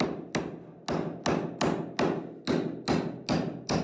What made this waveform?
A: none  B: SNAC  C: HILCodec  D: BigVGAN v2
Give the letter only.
A